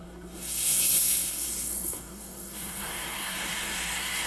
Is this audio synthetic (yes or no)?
yes